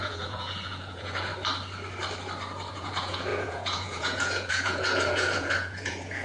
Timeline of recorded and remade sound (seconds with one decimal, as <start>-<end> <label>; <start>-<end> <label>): 0.0-1.3 remade; 1.3-2.7 recorded; 2.7-6.2 remade